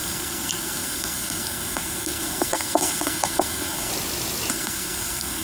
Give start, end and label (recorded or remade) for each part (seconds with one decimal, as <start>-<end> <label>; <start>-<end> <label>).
0.0-3.9 remade; 3.9-4.5 recorded; 4.5-5.4 remade